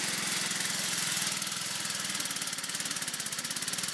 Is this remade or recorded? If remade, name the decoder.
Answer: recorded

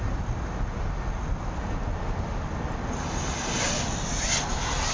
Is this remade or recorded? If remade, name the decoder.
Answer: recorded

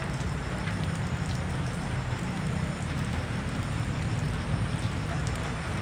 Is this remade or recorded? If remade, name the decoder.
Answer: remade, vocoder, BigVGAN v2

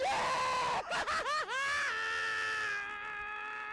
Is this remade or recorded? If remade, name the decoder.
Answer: recorded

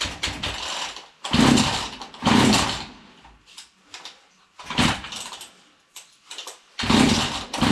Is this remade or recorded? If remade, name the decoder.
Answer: remade, vocoder, BigVGAN v2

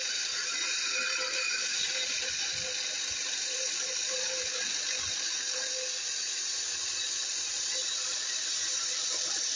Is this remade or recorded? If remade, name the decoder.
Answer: remade, vocoder, BigVGAN v2